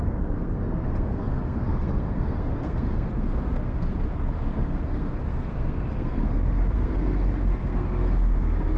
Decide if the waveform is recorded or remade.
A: remade